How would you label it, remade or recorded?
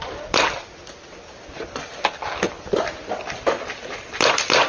recorded